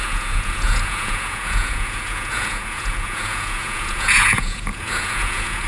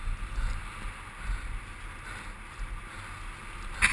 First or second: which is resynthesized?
first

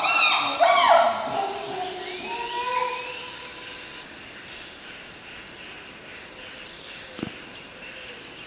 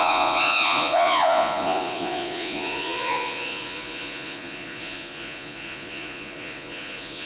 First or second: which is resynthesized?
second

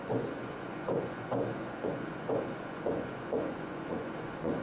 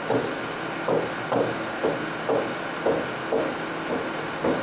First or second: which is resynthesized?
first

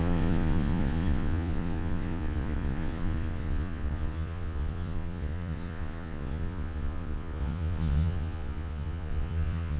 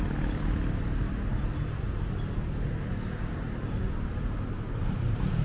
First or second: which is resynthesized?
first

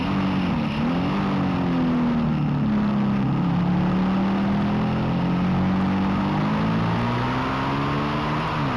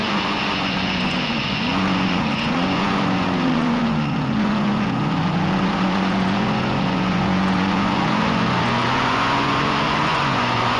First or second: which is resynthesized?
second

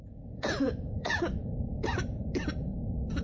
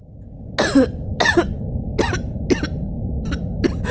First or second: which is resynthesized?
first